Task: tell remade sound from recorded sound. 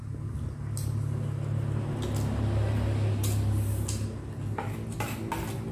recorded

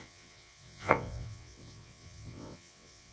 remade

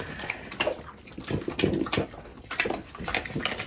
recorded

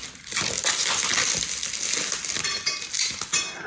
recorded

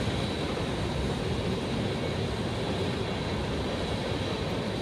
recorded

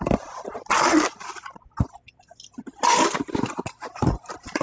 recorded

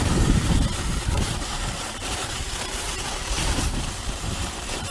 remade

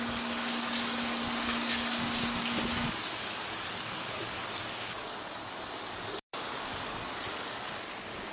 remade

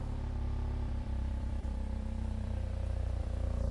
remade